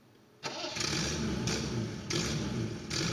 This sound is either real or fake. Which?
real